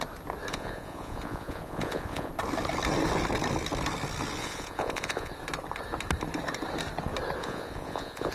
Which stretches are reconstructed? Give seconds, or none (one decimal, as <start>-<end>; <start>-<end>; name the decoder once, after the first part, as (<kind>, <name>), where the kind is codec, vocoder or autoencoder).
0.5-2.3 (vocoder, Vocos); 4.4-5.3; 7.4-8.3